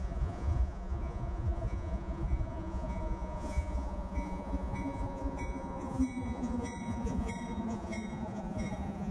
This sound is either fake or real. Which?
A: fake